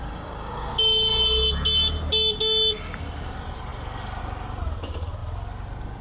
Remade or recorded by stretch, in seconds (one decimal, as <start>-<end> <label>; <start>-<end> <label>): 0.0-0.7 remade; 0.7-6.0 recorded